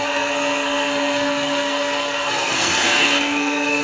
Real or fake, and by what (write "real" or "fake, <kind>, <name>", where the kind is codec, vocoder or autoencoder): fake, codec, SNAC